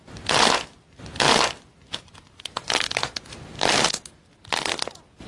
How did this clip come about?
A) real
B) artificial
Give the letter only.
A